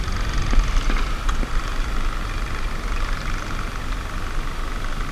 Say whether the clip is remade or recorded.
recorded